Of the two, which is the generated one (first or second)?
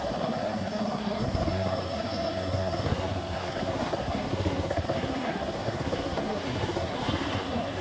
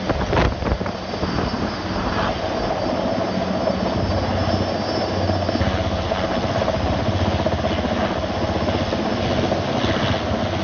first